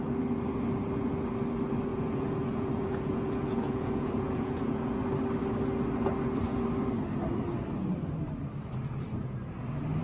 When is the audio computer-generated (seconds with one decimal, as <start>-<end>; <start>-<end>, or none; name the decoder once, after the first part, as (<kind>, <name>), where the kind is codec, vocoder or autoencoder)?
1.9-5.0 (vocoder, Vocos)